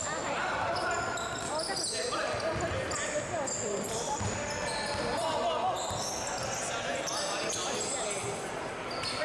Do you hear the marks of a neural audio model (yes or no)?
no